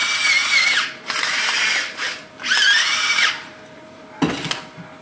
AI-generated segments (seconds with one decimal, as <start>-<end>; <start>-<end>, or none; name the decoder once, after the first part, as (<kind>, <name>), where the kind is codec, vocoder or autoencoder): 0.4-2.3 (vocoder, BigVGAN v2); 2.9-4.0